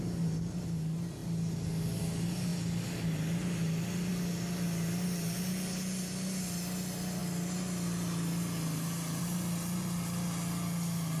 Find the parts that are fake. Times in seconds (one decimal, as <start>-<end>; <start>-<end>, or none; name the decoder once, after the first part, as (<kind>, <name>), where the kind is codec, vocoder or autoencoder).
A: none